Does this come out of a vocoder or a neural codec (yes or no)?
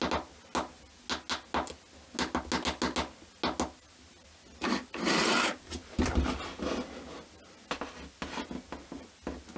no